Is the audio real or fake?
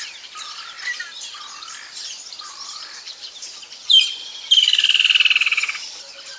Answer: fake